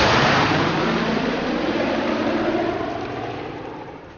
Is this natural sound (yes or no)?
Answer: no